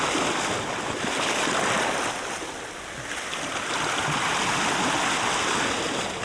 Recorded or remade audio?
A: recorded